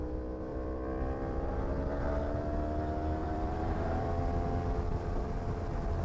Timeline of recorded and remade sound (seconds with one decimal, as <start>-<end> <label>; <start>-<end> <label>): 0.0-0.5 recorded; 0.5-1.5 remade; 1.5-3.2 recorded; 3.2-4.2 remade; 4.2-6.0 recorded